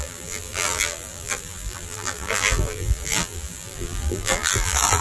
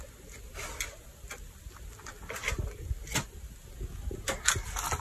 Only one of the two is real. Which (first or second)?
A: second